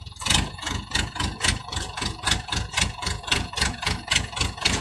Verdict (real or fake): fake